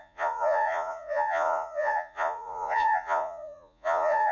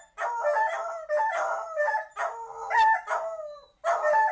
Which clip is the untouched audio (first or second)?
second